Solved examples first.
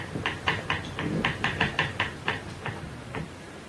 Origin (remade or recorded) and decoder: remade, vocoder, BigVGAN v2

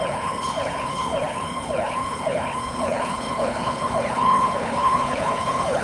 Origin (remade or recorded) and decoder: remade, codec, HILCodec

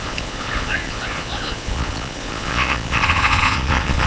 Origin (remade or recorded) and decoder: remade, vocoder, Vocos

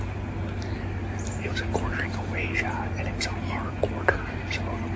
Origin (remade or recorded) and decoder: recorded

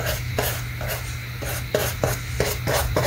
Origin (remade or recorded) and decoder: recorded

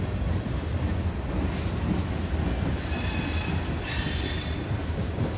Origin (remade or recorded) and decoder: recorded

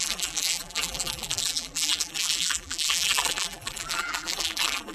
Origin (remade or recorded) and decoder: remade, vocoder, BigVGAN v2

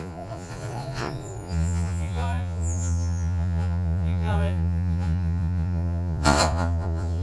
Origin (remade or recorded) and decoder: remade, vocoder, Vocos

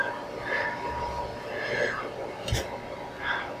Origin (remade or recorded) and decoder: recorded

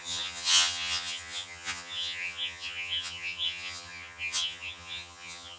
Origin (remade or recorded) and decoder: remade, vocoder, HiFi-GAN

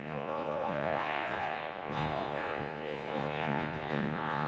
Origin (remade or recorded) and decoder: remade, vocoder, Vocos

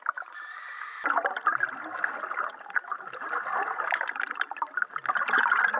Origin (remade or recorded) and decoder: recorded